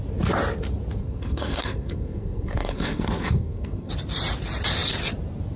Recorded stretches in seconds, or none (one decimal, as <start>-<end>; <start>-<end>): 0.0-1.0; 3.9-5.6